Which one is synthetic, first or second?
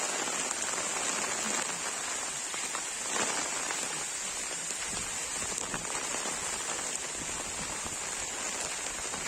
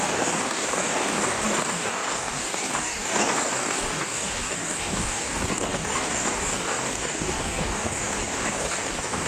second